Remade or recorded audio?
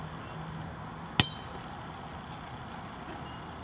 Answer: recorded